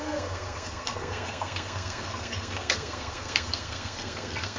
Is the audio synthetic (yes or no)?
yes